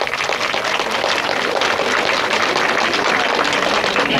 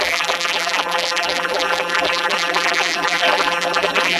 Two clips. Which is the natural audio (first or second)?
first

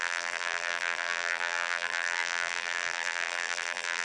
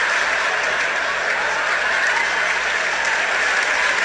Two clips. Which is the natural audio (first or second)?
second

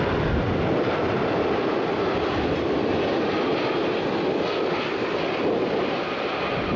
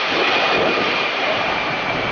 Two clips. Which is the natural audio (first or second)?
first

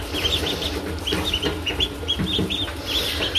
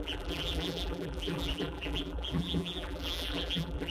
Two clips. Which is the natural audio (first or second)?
first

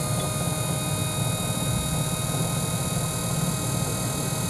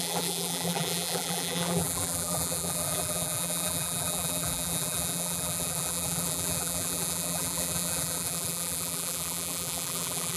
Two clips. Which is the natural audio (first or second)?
first